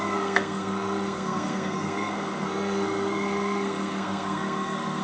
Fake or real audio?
fake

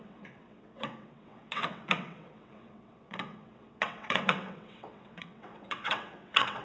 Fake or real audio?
fake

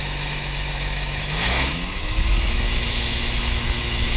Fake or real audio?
fake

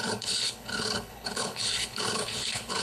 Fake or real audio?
fake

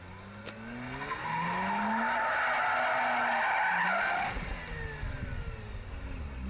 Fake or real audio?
real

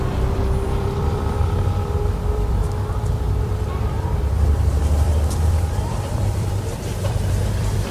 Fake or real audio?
fake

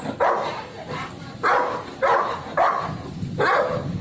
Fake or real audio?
real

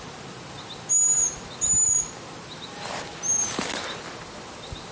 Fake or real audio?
real